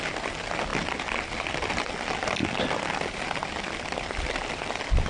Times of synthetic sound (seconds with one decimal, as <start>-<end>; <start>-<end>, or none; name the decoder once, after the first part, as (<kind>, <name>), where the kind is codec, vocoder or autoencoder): none